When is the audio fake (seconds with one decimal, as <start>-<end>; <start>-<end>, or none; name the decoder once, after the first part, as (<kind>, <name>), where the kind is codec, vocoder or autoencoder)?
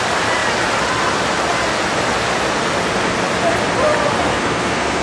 4.3-5.0 (codec, SNAC)